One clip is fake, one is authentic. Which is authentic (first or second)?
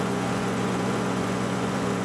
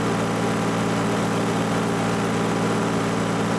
second